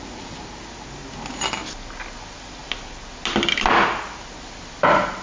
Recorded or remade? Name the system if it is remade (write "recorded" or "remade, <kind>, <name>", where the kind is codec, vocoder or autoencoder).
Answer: recorded